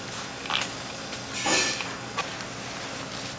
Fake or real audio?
real